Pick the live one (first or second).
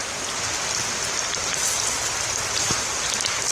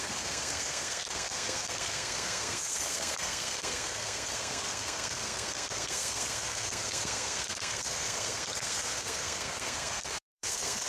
first